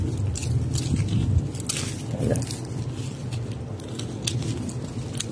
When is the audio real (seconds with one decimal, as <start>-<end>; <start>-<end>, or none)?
0.0-5.3